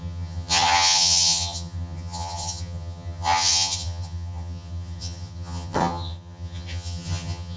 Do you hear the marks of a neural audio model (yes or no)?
yes